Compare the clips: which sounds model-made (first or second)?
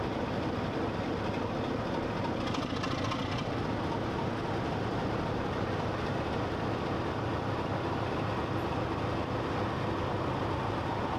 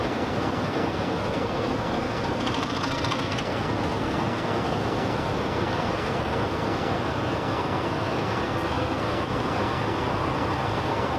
second